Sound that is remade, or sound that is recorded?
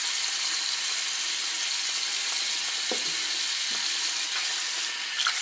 recorded